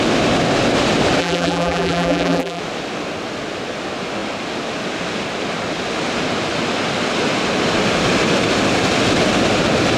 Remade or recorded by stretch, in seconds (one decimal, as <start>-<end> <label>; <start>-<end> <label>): 0.0-1.2 recorded; 1.2-2.6 remade; 2.6-10.0 recorded